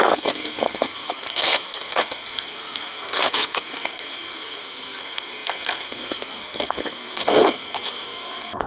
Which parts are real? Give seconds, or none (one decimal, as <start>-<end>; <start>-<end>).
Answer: none